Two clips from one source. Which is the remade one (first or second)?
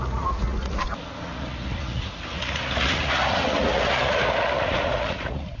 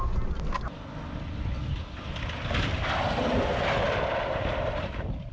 first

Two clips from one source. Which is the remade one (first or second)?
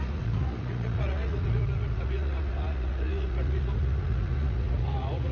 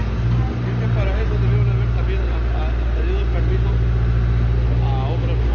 first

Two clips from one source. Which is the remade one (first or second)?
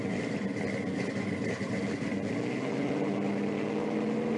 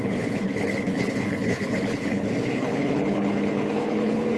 second